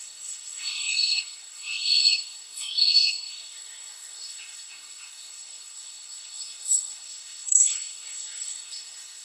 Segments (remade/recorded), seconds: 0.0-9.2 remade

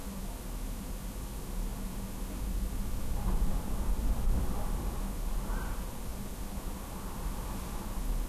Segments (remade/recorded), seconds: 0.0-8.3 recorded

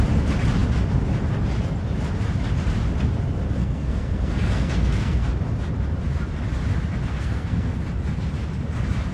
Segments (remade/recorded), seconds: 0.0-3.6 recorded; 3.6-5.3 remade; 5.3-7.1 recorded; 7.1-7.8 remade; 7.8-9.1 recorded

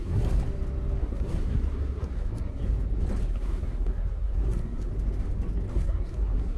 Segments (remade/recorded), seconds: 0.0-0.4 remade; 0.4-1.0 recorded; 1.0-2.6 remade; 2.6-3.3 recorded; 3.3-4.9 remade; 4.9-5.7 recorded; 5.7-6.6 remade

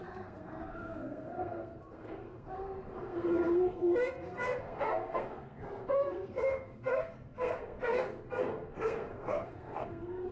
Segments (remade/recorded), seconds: 0.0-10.3 remade

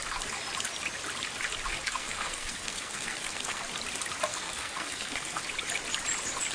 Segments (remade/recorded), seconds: 0.0-1.7 recorded; 1.7-3.6 remade; 3.6-4.3 recorded; 4.3-5.4 remade; 5.4-6.5 recorded

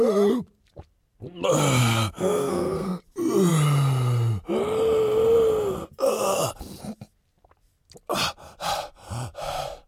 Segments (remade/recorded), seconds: 0.0-1.8 recorded; 1.8-3.0 remade; 3.0-9.9 recorded